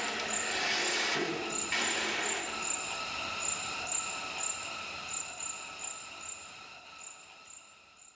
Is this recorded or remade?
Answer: remade